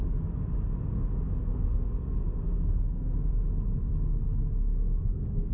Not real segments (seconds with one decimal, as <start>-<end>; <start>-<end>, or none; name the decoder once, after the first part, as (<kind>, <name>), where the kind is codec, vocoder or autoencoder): 1.5-3.3 (codec, SNAC); 4.2-5.5